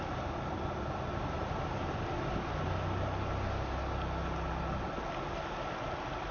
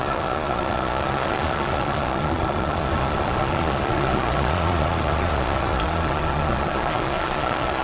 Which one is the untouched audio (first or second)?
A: first